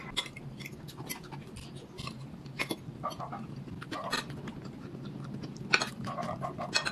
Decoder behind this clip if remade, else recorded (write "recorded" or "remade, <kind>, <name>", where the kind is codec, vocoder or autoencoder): recorded